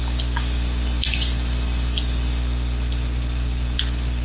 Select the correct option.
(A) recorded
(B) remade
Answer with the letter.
A